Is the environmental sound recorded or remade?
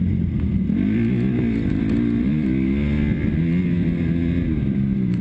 recorded